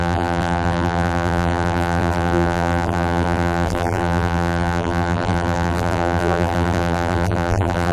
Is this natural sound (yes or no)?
no